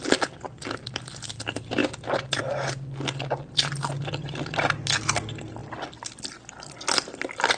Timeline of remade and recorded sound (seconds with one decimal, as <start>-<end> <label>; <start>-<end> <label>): 0.0-7.6 recorded